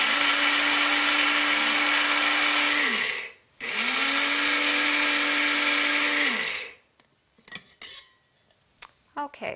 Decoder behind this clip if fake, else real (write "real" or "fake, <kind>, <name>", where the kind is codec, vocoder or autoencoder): real